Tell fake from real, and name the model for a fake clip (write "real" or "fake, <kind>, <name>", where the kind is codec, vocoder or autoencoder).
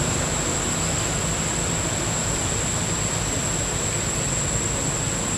real